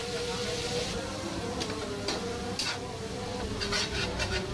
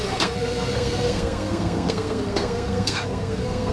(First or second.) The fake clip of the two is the second